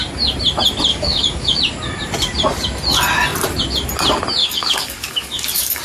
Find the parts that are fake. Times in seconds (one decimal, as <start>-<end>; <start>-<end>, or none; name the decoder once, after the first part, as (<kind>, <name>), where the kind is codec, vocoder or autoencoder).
0.9-1.6 (codec, DAC); 4.4-5.8